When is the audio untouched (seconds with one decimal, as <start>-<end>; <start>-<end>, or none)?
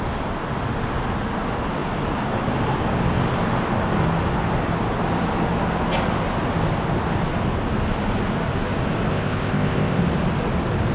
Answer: 0.0-9.1; 10.0-10.9